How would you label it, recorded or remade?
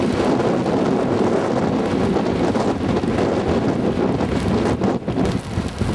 recorded